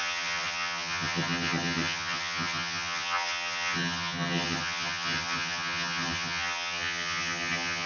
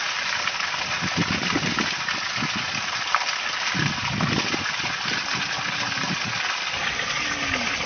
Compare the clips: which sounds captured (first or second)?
second